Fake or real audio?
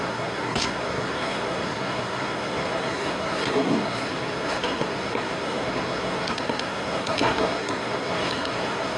fake